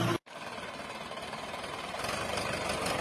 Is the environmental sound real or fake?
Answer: real